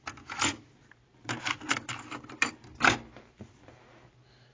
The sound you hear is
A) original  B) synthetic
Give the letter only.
A